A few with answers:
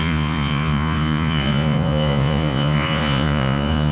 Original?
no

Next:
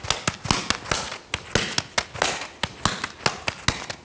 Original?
yes